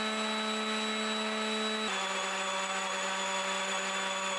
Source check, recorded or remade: recorded